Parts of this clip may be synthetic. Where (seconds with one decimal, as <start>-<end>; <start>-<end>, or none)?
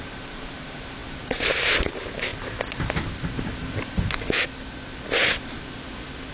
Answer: 0.0-2.3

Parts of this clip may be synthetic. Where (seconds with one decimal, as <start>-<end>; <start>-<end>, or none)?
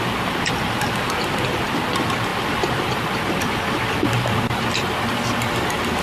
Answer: none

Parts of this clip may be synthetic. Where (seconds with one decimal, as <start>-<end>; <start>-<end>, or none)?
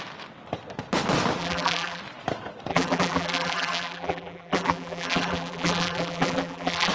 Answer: 1.4-2.0; 2.7-6.9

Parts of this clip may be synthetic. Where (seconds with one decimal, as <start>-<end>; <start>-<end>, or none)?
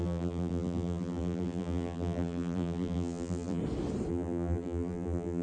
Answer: 0.0-3.6; 4.1-5.4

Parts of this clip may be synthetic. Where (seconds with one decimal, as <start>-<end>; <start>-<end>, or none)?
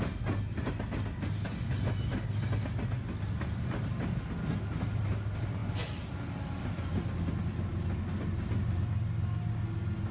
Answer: none